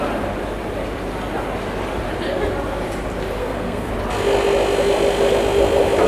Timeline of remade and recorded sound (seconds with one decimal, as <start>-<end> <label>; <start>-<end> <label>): 0.0-3.4 recorded; 3.4-3.9 remade; 3.9-6.1 recorded